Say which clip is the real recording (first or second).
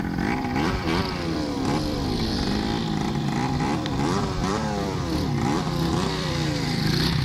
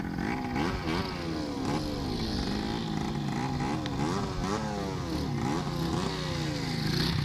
second